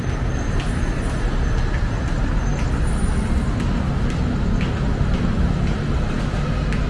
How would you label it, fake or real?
real